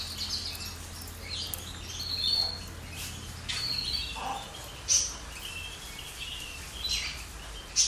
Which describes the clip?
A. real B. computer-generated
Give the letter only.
A